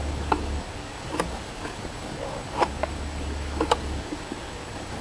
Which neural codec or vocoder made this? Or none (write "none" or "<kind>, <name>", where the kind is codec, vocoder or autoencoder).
codec, DAC